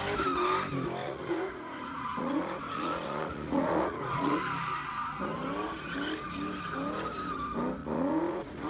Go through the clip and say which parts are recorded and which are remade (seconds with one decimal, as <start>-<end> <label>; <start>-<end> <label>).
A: 0.0-1.0 recorded; 1.0-4.4 remade; 4.4-7.8 recorded; 7.8-8.7 remade